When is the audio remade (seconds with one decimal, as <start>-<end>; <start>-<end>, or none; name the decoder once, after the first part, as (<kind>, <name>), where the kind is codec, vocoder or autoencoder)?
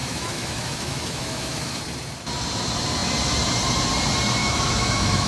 0.0-1.8 (autoencoder, DAC-VAE); 4.4-5.3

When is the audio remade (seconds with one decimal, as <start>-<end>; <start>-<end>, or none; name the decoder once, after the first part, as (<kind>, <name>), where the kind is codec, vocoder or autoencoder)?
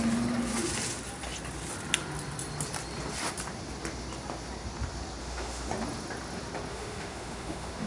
5.2-5.7 (autoencoder, DAC-VAE); 6.7-7.9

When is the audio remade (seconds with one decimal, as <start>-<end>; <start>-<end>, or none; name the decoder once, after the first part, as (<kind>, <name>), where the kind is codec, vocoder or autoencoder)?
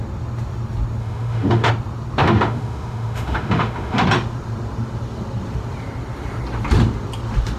1.0-1.7 (autoencoder, DAC-VAE); 2.2-4.0